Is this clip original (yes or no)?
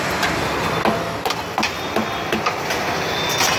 yes